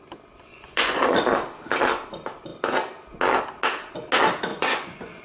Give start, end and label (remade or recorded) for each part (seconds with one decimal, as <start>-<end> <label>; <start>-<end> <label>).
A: 0.0-0.5 recorded; 0.5-1.2 remade; 1.2-4.5 recorded; 4.5-5.2 remade